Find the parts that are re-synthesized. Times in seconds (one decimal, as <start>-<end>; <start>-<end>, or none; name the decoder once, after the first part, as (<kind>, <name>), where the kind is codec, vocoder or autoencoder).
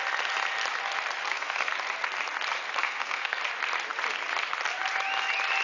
1.2-1.7 (codec, SNAC); 2.8-3.4